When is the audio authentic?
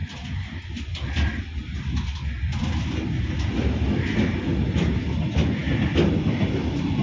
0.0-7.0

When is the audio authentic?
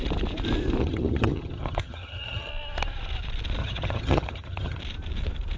0.0-0.8; 2.5-3.6; 4.8-5.6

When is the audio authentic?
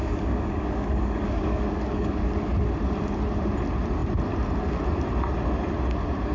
2.2-6.3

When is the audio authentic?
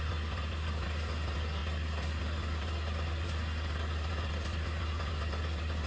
0.0-5.9